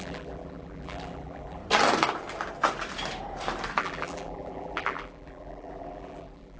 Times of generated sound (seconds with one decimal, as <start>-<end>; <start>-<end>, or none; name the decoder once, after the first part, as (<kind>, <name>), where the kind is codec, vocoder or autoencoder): 0.0-1.6 (vocoder, BigVGAN v2); 3.8-6.6